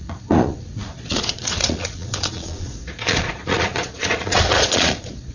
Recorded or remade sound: remade